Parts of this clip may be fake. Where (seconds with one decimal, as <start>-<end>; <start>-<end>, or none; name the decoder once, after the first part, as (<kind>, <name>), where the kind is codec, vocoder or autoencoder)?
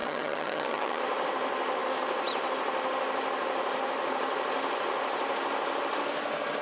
0.0-1.0 (vocoder, HiFi-GAN)